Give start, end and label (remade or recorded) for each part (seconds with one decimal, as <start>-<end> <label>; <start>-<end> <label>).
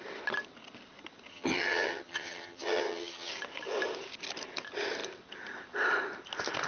0.0-1.3 recorded; 1.3-3.3 remade; 3.3-6.7 recorded